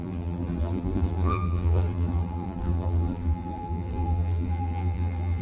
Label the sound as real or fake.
fake